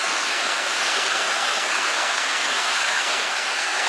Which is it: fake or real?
fake